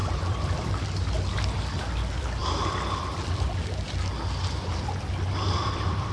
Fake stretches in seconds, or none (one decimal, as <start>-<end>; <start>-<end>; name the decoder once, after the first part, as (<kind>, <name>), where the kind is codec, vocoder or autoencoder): 0.0-0.7 (vocoder, BigVGAN v2)